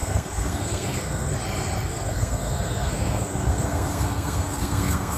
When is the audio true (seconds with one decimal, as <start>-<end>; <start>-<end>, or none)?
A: 1.3-1.9